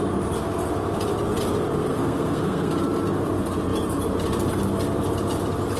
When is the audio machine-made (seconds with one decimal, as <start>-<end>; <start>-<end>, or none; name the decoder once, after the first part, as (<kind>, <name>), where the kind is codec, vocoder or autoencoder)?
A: 1.8-2.7 (codec, SNAC)